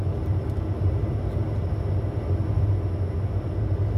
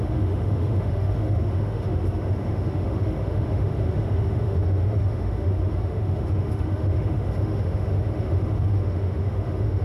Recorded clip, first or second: first